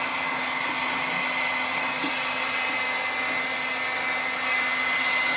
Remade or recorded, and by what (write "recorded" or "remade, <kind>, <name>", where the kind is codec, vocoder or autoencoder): recorded